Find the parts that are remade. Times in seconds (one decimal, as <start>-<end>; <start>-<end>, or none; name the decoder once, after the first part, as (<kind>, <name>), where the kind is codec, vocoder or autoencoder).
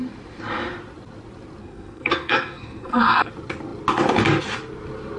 1.6-3.3 (codec, SNAC)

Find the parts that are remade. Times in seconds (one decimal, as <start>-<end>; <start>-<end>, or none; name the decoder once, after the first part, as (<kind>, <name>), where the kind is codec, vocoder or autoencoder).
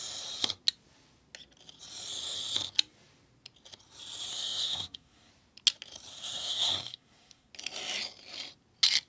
4.3-5.3 (codec, SNAC); 6.1-7.5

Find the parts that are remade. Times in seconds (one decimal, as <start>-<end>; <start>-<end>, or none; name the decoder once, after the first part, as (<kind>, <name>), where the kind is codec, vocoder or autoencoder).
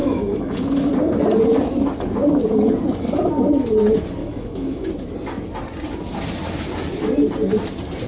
0.0-0.9 (autoencoder, DAC-VAE); 4.2-4.9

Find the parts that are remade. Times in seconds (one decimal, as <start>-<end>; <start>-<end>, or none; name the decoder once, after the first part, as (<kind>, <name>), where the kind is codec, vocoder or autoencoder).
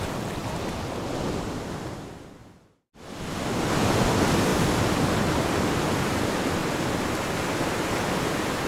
0.0-0.4 (vocoder, BigVGAN v2); 1.3-2.4; 3.7-4.5; 5.3-6.6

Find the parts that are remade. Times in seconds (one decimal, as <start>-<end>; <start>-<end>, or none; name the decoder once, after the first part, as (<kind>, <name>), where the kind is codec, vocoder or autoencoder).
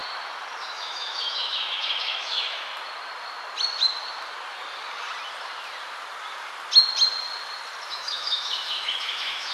0.6-2.7 (autoencoder, DAC-VAE); 7.9-9.5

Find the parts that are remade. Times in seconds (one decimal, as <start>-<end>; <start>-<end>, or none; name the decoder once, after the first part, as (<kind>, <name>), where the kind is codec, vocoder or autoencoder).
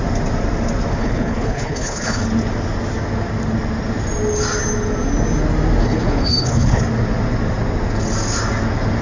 0.9-2.2 (codec, HILCodec); 5.8-6.8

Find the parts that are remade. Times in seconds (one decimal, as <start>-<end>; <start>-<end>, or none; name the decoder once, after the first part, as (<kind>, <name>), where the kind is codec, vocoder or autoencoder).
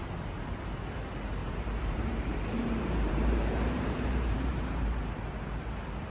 1.4-5.1 (vocoder, BigVGAN v2)